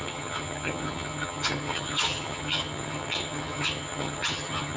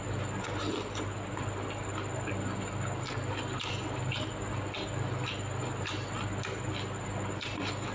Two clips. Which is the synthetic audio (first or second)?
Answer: first